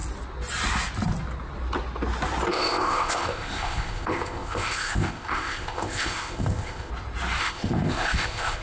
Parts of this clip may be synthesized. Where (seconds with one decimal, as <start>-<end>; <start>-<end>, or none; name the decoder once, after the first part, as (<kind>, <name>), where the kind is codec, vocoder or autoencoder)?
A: 2.5-6.9 (codec, ZipCodec); 7.4-8.6